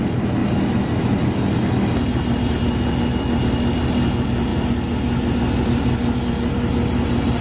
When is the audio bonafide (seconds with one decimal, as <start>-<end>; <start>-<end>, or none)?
0.0-7.4